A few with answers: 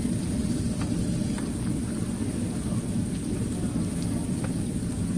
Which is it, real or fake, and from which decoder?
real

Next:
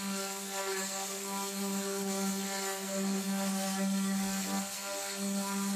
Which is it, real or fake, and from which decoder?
fake, codec, SNAC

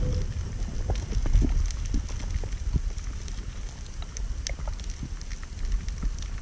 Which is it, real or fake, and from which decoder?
real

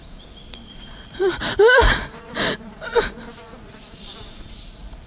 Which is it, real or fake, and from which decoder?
fake, vocoder, Vocos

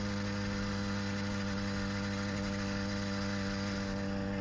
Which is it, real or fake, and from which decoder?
real